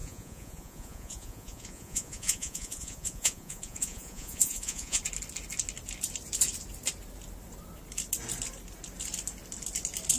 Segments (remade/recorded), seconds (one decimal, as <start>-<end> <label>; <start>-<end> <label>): 0.0-5.0 remade; 5.0-10.2 recorded